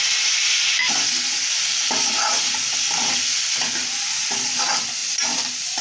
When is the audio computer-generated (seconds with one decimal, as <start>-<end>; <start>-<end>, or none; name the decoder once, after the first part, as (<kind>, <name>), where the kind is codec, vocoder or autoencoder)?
none